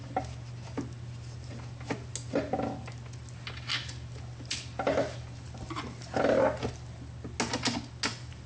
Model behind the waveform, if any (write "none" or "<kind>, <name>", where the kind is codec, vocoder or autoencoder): none